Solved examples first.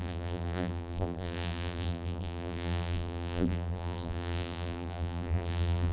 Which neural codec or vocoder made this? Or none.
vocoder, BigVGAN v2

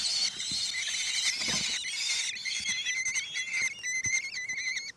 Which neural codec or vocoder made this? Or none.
none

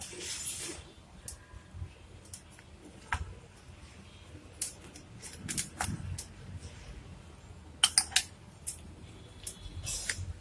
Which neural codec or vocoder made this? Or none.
none